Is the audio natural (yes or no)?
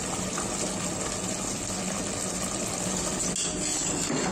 yes